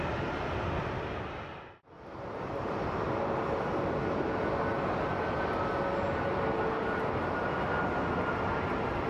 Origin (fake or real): real